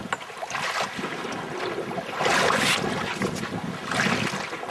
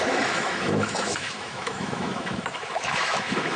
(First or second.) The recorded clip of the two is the first